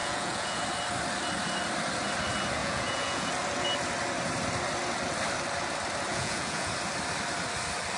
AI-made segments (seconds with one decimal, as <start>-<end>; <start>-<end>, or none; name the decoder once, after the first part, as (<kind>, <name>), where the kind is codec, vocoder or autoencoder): 0.0-0.6 (vocoder, Vocos); 2.6-3.3; 6.1-6.7